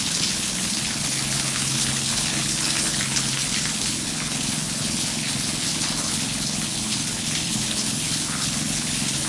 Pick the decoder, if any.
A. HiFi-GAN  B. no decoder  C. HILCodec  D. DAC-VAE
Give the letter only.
C